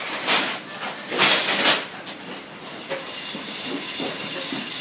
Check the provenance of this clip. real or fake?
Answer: real